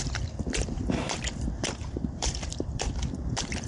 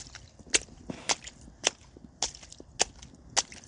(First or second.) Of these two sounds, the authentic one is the second